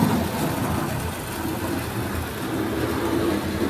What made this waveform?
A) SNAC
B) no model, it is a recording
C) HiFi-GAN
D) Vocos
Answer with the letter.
B